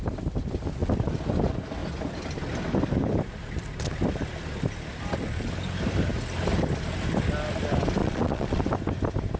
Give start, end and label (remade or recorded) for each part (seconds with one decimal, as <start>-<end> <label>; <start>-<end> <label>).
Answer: 0.0-8.0 recorded; 8.0-8.6 remade; 8.6-9.4 recorded

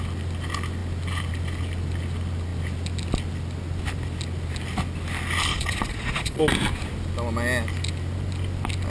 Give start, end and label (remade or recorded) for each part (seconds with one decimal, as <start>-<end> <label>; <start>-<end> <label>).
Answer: 0.0-5.5 recorded; 5.5-6.4 remade; 6.4-8.9 recorded

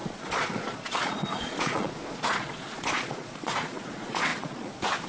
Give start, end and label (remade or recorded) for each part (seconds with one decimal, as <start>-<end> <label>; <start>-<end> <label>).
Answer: 0.0-5.1 remade

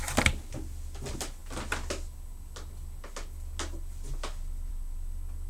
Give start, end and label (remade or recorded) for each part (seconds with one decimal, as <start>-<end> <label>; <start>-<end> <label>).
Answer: 0.0-5.5 recorded